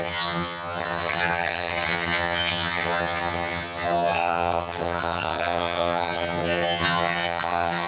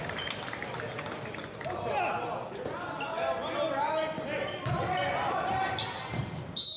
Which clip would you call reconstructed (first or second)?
first